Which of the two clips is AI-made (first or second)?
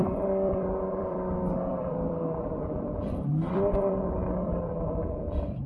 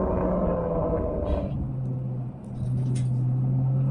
first